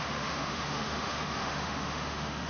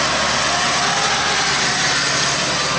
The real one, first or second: second